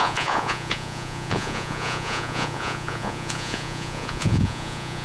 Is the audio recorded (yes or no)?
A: no